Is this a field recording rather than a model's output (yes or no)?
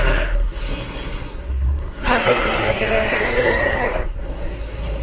no